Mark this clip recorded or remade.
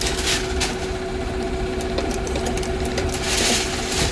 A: recorded